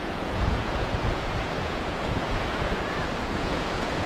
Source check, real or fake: fake